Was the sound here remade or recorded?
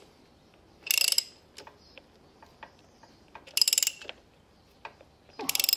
recorded